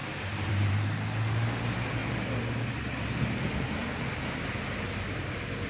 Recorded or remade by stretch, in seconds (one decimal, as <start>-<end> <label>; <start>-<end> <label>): 0.0-0.7 remade; 0.7-5.7 recorded